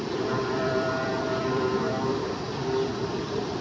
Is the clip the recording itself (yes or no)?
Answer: no